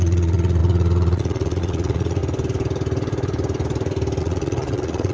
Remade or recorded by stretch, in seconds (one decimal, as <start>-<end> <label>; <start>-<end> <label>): 0.0-2.2 remade; 2.2-4.2 recorded; 4.2-5.1 remade